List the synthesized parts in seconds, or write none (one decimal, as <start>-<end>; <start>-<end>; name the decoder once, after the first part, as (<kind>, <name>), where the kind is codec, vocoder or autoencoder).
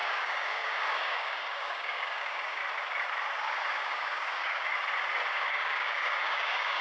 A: 0.0-2.6 (codec, DAC); 3.7-4.7; 5.3-6.8